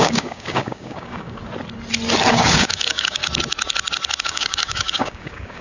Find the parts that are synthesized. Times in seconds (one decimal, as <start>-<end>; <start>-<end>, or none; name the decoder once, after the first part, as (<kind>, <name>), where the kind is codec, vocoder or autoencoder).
0.0-1.4 (codec, DAC); 2.3-3.2; 4.2-5.6